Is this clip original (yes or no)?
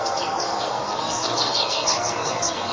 no